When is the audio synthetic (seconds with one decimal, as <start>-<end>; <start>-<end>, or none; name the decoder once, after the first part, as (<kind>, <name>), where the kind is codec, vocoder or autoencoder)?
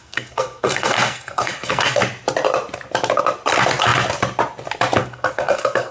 0.0-2.0 (codec, SNAC); 5.0-5.9